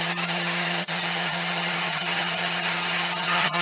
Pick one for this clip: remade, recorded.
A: remade